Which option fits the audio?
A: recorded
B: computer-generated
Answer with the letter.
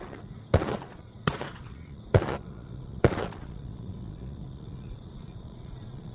B